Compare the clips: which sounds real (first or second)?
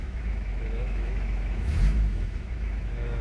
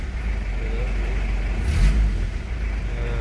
second